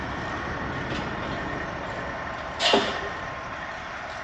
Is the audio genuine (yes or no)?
yes